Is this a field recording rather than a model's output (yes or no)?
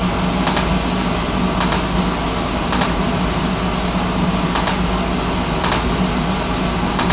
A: yes